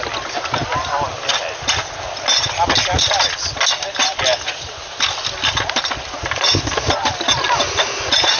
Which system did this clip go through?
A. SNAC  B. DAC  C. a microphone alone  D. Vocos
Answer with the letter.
C